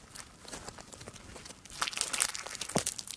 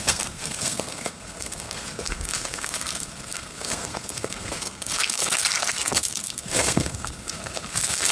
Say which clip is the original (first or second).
first